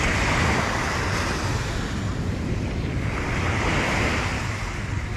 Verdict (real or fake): real